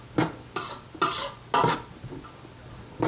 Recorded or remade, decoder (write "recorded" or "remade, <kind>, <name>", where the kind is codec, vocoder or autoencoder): recorded